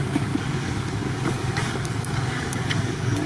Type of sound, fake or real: fake